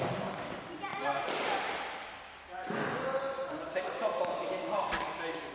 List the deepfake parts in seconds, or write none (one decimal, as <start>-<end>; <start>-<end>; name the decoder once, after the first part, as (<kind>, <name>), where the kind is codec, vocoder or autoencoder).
3.4-4.0 (vocoder, BigVGAN v2)